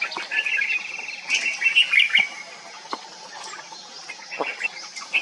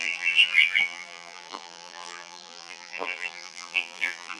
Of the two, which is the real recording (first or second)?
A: first